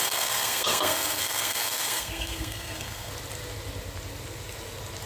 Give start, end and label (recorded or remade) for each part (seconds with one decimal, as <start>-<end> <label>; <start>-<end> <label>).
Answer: 0.0-3.1 remade; 3.1-5.1 recorded